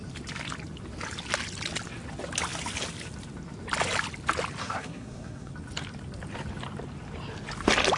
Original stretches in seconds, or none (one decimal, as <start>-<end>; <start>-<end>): 0.0-4.6; 5.5-8.0